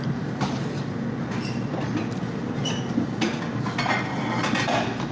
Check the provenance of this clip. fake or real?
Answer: real